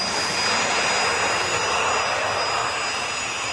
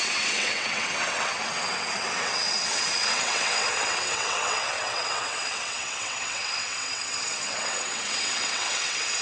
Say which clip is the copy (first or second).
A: second